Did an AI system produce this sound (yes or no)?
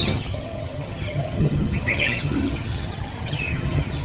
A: yes